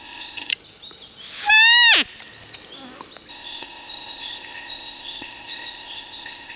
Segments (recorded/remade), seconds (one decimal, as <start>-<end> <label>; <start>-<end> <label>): 0.0-0.5 remade; 0.5-3.3 recorded; 3.3-6.6 remade